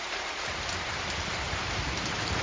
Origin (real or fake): fake